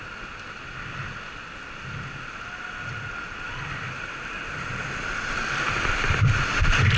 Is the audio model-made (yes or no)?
no